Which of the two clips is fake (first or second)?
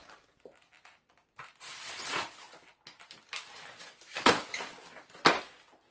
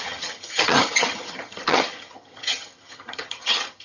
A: second